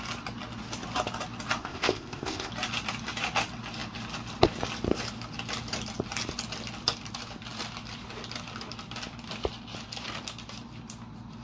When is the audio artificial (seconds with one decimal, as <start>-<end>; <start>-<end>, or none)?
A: 1.6-2.5